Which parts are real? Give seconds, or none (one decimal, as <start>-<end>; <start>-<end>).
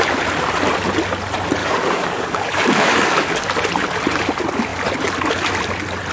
0.0-1.6; 3.5-6.1